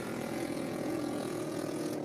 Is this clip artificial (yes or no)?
yes